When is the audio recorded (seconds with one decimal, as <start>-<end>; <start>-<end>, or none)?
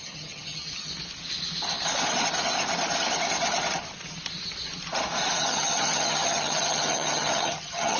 0.9-5.4